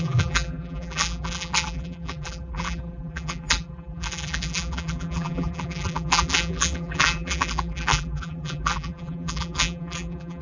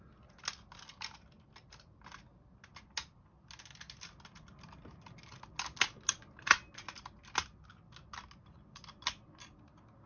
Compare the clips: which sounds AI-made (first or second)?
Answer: first